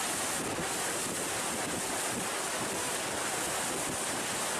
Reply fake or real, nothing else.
real